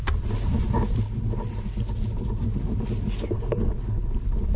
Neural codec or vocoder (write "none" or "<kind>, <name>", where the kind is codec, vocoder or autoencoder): none